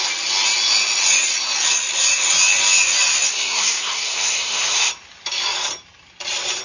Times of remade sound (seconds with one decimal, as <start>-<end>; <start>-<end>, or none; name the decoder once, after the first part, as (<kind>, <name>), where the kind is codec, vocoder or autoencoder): 3.3-4.9 (codec, SNAC)